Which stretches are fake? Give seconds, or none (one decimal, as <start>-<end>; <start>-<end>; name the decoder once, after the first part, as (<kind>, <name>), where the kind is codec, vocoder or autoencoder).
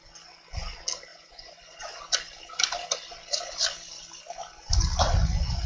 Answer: 1.1-2.0 (vocoder, Vocos)